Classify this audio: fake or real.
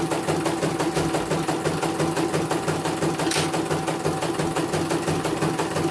real